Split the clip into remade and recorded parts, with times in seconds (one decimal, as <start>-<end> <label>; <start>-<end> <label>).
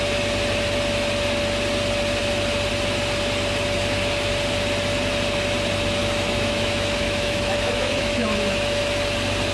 0.0-6.0 recorded; 6.0-8.8 remade; 8.8-9.5 recorded